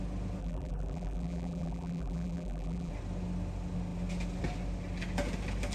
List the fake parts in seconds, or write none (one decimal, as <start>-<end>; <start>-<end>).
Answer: 0.4-2.9